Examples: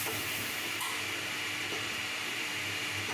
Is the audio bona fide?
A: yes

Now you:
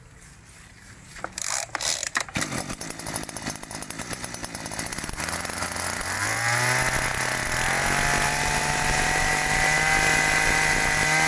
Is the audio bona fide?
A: yes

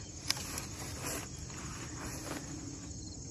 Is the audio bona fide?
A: yes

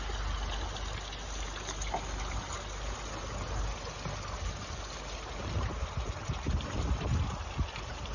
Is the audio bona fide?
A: yes